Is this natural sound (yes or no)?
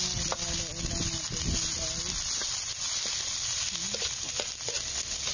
yes